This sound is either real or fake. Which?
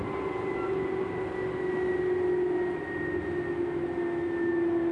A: real